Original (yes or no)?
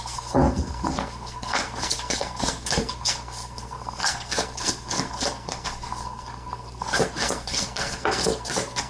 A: no